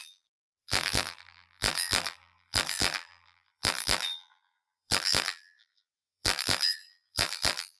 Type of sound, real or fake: fake